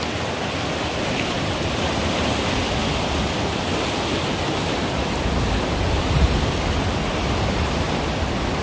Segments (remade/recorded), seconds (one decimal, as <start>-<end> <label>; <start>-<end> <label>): 0.0-8.6 recorded